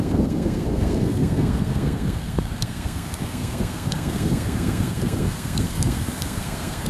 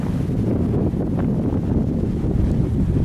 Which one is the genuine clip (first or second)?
second